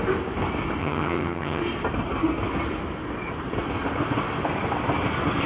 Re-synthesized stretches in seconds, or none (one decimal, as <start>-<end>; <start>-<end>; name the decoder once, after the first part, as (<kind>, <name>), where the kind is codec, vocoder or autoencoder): 0.8-1.6 (vocoder, HiFi-GAN)